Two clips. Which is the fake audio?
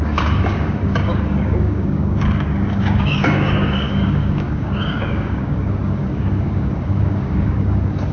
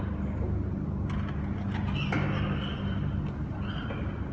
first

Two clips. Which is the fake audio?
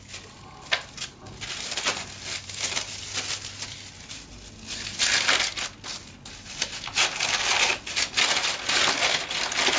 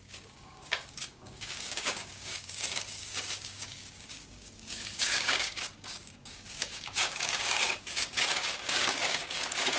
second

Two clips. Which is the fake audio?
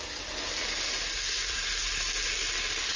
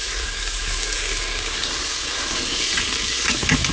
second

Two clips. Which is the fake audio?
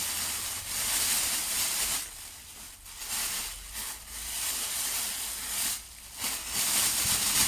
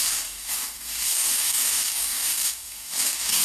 second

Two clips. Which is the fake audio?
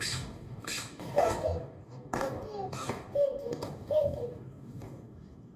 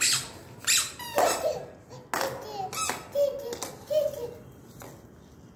first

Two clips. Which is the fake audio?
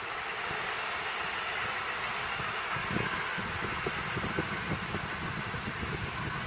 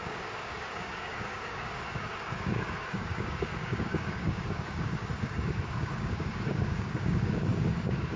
second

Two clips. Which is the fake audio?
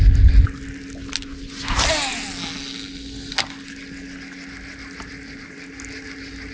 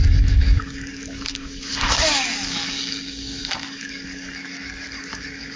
second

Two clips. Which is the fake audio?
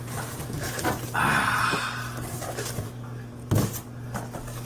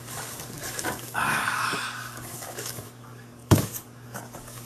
second